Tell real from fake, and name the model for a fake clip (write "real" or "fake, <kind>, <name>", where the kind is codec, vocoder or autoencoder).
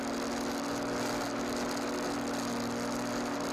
real